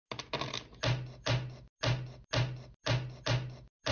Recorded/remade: recorded